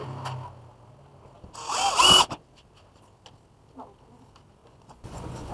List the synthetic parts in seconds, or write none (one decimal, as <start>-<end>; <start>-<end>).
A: 4.6-5.5

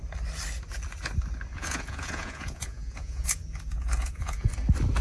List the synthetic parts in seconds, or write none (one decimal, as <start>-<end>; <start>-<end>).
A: 1.5-4.5

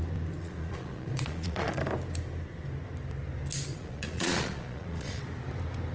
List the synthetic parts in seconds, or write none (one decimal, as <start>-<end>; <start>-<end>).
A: 0.4-1.8; 3.7-5.2

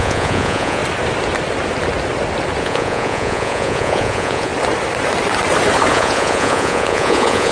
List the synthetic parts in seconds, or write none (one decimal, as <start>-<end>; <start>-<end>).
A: 0.0-0.8; 2.6-4.5; 5.9-7.5

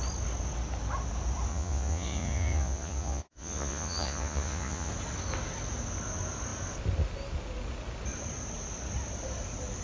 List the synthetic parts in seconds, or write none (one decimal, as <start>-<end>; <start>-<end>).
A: 1.5-4.9

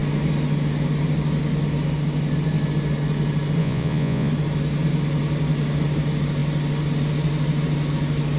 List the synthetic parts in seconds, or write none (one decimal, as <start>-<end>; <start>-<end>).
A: 3.6-4.3

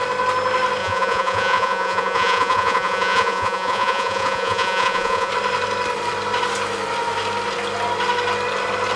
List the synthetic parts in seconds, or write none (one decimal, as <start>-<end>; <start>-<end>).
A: 0.8-5.3

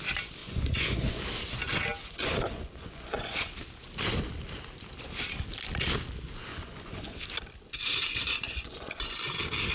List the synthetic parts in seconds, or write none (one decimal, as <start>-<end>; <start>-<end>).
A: 0.4-1.2; 2.0-3.5; 6.5-7.2; 8.2-9.2